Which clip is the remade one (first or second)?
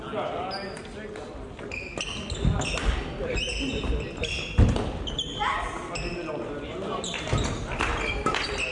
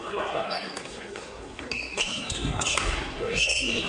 second